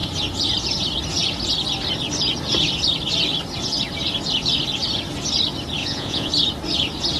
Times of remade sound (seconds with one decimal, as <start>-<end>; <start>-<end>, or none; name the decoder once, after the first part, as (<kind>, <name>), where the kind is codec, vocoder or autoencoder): 5.8-6.3 (vocoder, Vocos)